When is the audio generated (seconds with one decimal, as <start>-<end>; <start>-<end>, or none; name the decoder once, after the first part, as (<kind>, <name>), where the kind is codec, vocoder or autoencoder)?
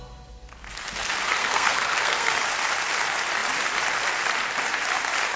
1.4-2.3 (codec, SNAC)